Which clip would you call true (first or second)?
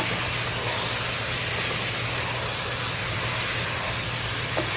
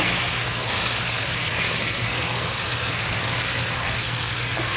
first